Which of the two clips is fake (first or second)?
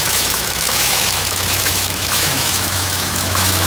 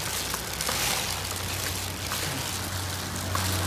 first